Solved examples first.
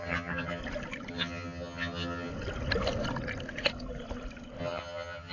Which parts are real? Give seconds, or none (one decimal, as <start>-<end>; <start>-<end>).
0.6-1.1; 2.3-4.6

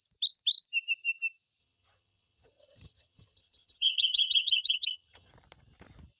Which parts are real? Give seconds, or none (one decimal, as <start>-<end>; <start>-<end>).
0.0-1.6; 5.3-6.2

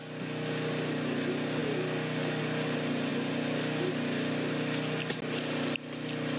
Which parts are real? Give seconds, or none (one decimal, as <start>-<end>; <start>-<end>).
0.0-6.4

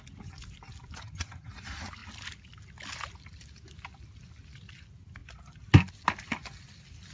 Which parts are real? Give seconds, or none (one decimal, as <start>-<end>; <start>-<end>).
0.0-1.0; 1.5-7.1

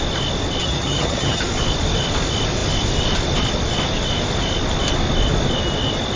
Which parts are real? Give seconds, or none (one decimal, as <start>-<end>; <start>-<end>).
0.0-0.6; 1.4-6.2

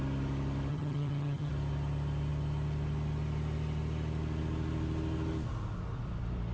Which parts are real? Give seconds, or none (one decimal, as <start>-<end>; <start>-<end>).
0.0-0.7; 1.5-6.5

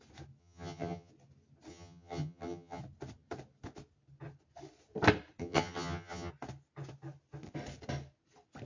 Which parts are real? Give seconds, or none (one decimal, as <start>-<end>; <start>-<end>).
0.0-0.4; 1.1-1.7; 2.8-5.4; 6.3-8.7